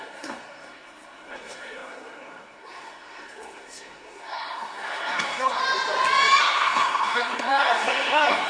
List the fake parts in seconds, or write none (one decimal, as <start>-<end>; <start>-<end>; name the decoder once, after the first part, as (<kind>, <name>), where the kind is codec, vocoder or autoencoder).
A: 0.0-5.6 (codec, SNAC); 6.4-8.5